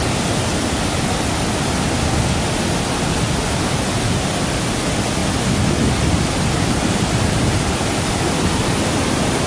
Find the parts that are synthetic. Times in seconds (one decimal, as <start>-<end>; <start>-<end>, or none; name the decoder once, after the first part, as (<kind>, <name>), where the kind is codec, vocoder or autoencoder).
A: none

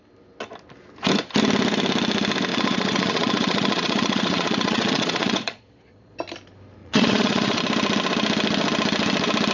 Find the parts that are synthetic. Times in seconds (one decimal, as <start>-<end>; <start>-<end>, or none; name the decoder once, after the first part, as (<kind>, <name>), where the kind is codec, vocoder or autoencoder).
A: 2.5-6.2 (vocoder, Vocos); 6.8-7.6